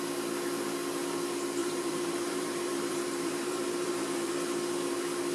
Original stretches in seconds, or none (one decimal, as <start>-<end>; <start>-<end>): 0.0-1.6; 4.3-5.3